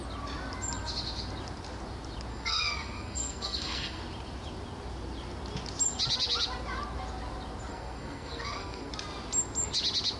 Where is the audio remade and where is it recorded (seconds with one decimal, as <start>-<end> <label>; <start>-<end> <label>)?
0.0-2.3 recorded; 2.3-4.0 remade; 4.0-7.7 recorded; 7.7-8.9 remade; 8.9-10.2 recorded